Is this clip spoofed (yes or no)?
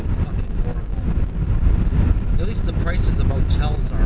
no